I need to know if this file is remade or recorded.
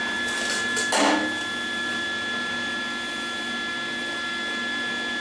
recorded